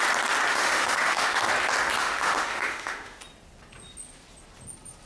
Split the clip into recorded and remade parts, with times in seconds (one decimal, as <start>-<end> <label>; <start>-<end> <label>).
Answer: 0.0-0.5 recorded; 0.5-1.4 remade; 1.4-2.0 recorded; 2.0-3.2 remade; 3.2-5.1 recorded